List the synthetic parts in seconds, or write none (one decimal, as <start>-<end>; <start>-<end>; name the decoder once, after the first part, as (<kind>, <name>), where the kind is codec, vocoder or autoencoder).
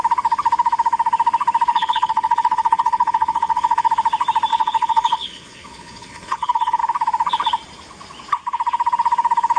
1.7-3.9 (codec, HILCodec); 4.5-6.8